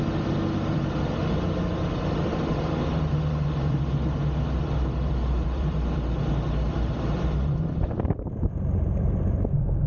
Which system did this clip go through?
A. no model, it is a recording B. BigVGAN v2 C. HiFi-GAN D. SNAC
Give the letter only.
B